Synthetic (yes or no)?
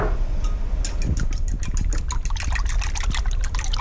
no